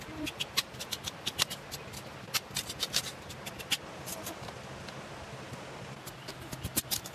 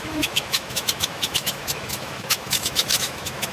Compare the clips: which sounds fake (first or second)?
second